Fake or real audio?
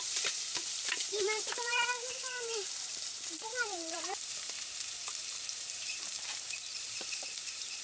fake